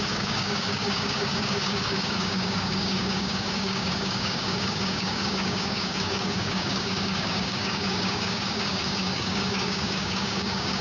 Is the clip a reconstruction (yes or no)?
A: yes